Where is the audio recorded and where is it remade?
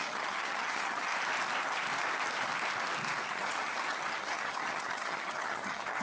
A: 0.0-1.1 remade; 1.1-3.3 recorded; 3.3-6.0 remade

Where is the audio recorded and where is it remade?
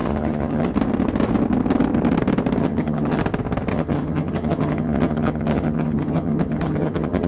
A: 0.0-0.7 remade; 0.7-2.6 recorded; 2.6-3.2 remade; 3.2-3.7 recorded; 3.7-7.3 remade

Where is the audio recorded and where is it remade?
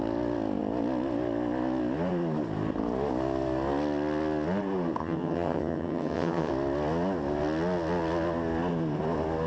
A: 0.0-5.0 recorded; 5.0-6.5 remade; 6.5-9.5 recorded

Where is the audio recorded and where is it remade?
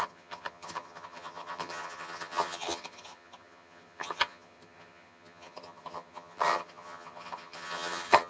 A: 0.0-8.3 remade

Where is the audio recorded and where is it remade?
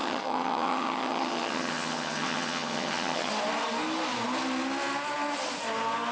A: 0.0-3.3 remade; 3.3-6.1 recorded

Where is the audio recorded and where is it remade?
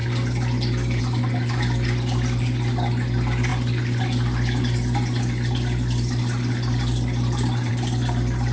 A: 0.0-8.5 recorded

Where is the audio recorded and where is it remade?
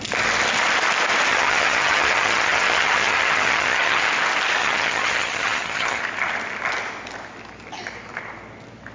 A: 0.0-1.3 recorded; 1.3-4.1 remade; 4.1-4.6 recorded; 4.6-6.0 remade; 6.0-8.9 recorded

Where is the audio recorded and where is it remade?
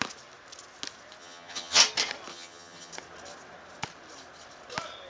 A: 0.0-1.2 recorded; 1.2-1.8 remade; 1.8-2.3 recorded; 2.3-2.9 remade; 2.9-5.1 recorded